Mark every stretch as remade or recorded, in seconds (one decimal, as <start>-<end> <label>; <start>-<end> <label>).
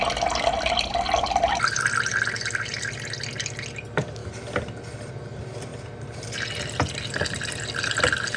0.0-8.4 recorded